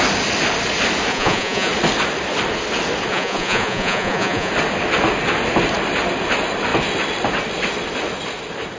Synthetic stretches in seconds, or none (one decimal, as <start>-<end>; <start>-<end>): 1.1-1.7; 3.1-4.5